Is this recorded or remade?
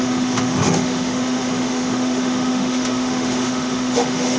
remade